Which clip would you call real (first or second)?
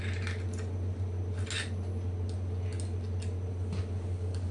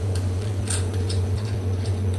first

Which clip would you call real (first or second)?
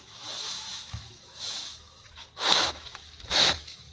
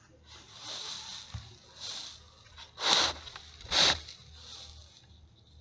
second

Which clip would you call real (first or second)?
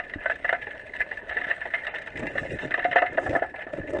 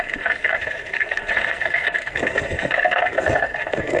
first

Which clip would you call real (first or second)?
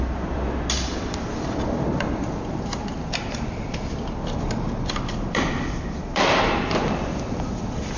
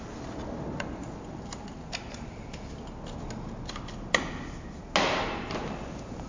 second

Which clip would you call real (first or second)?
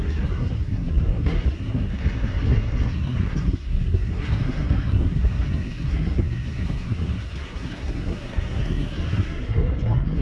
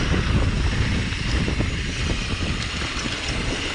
second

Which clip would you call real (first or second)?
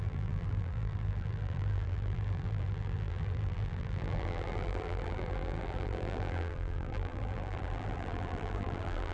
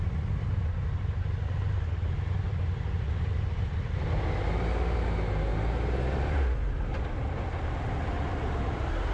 second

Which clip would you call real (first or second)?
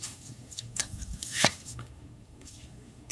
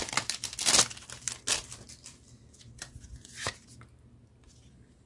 second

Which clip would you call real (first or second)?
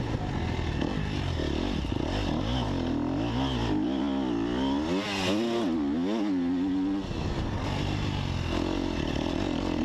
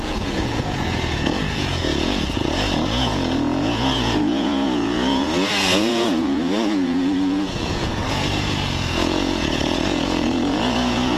first